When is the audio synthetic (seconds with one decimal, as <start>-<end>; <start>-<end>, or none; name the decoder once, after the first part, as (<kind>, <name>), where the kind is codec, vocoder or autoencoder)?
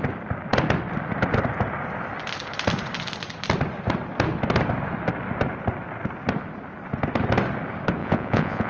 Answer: 8.0-8.7 (vocoder, Vocos)